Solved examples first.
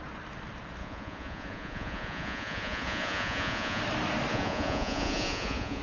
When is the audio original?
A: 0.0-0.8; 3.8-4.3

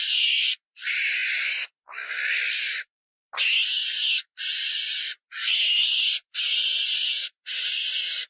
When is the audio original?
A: 0.0-8.3

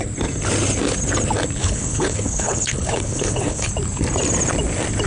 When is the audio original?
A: 0.0-1.6; 3.7-5.1